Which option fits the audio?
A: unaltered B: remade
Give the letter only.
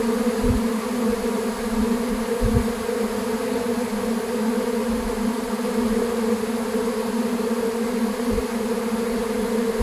A